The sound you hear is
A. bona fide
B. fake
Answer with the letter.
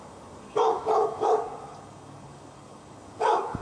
B